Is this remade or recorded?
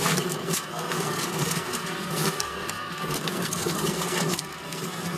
remade